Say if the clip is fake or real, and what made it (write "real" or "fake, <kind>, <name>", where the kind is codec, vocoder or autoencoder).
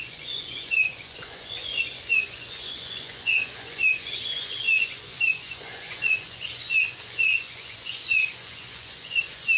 fake, vocoder, Vocos